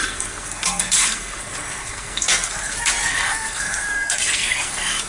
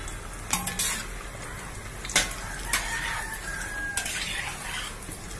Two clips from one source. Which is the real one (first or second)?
second